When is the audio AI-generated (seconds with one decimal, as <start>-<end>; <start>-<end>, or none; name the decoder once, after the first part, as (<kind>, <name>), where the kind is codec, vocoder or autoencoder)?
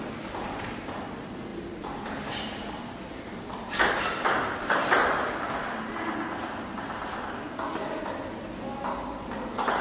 1.5-3.9 (vocoder, BigVGAN v2)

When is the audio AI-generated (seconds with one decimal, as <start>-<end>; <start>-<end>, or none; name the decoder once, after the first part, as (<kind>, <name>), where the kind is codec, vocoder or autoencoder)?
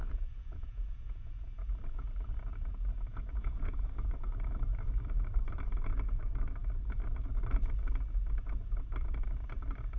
0.0-1.6 (vocoder, Vocos); 3.1-3.9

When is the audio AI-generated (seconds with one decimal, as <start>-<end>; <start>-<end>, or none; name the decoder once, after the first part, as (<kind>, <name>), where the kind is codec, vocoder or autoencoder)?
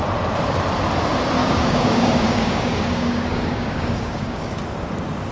1.4-4.6 (codec, DAC)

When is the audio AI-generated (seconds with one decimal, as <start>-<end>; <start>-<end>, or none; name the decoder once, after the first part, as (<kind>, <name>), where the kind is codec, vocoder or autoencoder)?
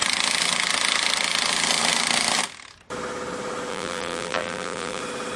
3.7-5.0 (vocoder, BigVGAN v2)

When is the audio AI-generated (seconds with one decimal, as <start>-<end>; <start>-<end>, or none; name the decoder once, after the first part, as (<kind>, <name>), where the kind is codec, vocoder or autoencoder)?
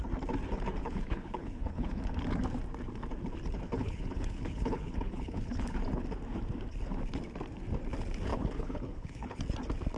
0.8-2.0 (codec, HILCodec); 3.8-5.8; 8.3-9.4